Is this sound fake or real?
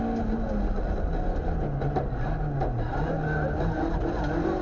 real